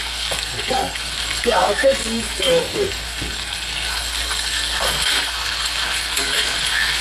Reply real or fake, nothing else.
fake